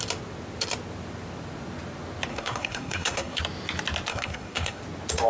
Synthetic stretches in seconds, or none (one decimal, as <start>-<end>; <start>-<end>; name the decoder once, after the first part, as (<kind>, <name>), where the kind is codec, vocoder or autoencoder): 2.3-3.4 (codec, SNAC); 4.1-4.8

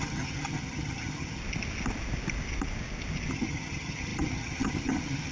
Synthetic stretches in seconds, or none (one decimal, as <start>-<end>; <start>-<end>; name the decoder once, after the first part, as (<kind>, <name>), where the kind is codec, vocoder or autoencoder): 0.0-1.4 (vocoder, HiFi-GAN); 3.3-5.3

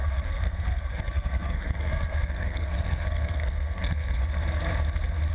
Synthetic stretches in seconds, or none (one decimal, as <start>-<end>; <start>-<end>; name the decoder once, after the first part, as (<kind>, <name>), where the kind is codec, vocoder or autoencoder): 0.0-4.2 (codec, SNAC)

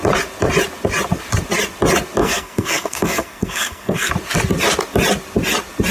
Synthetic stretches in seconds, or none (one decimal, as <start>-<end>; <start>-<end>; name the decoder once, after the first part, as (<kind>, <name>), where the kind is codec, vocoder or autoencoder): 2.2-4.1 (codec, SNAC)

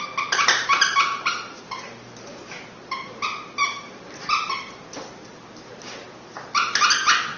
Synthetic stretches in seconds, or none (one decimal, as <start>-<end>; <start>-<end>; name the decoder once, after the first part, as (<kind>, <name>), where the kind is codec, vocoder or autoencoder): 1.1-5.5 (vocoder, BigVGAN v2)